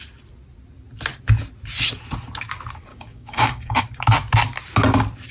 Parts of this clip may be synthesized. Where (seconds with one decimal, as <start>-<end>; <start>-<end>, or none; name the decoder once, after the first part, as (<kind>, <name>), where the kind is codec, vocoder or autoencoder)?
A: 2.9-3.8 (codec, DAC)